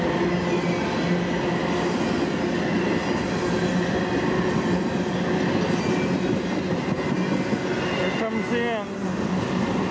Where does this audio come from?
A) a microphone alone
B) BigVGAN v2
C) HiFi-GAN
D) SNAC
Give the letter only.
A